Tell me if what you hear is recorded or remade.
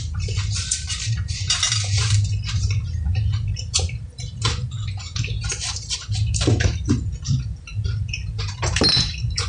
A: remade